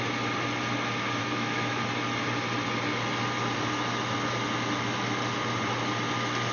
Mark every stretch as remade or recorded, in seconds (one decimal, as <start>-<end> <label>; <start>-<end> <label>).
0.0-1.2 recorded; 1.2-1.8 remade; 1.8-6.5 recorded